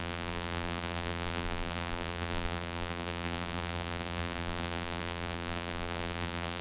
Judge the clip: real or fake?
fake